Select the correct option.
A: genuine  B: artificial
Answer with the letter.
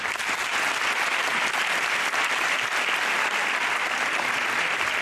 B